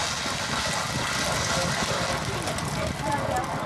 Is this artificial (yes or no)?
no